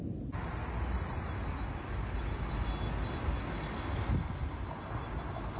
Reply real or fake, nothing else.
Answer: real